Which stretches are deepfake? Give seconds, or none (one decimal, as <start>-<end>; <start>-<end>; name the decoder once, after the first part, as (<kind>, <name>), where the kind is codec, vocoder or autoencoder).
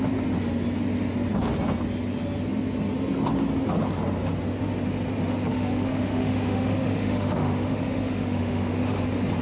5.5-9.0 (autoencoder, DAC-VAE)